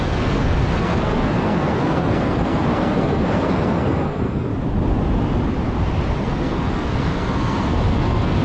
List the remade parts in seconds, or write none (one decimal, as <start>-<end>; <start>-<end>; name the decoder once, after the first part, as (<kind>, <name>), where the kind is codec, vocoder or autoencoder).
0.0-4.5 (codec, SNAC); 6.2-8.4